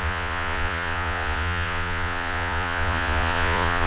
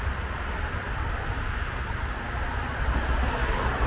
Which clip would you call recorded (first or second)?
second